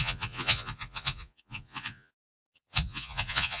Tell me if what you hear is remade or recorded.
remade